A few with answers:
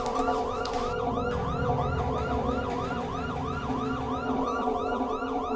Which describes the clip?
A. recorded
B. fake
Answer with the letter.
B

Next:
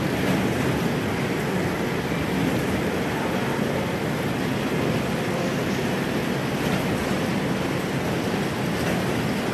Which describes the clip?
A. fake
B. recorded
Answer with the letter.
B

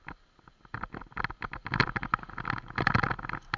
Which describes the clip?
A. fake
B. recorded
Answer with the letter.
B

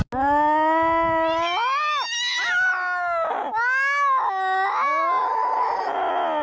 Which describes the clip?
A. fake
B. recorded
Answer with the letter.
B